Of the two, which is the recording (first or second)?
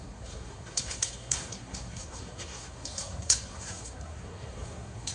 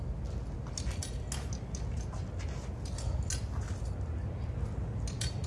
second